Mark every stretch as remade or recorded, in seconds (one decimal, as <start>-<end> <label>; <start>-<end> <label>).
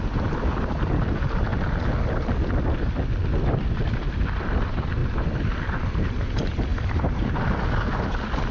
0.0-1.5 remade; 1.5-4.5 recorded; 4.5-8.5 remade